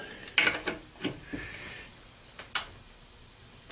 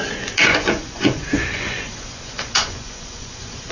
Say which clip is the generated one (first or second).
second